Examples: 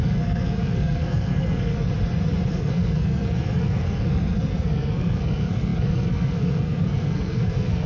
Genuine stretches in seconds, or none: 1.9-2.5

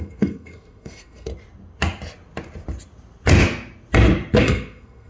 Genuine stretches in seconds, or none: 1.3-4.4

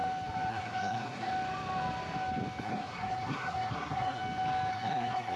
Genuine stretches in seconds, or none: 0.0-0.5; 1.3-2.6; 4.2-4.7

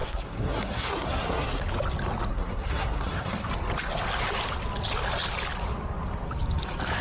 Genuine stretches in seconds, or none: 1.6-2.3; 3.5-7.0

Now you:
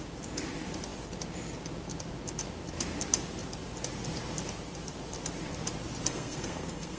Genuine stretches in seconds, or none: 0.0-6.1

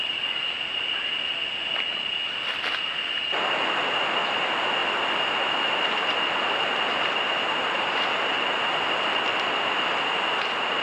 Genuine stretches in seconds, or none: 0.0-10.8

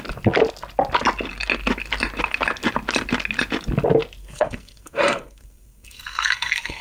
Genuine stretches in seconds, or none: 0.0-4.2